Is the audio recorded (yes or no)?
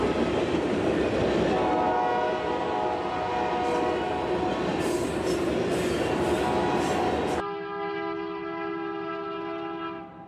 yes